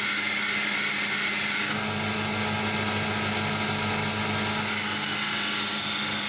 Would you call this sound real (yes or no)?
yes